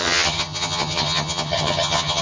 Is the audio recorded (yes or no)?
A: no